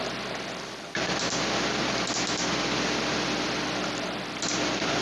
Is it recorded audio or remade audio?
recorded